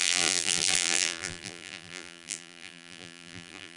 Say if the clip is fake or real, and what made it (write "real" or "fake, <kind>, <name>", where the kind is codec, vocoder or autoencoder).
fake, vocoder, BigVGAN v2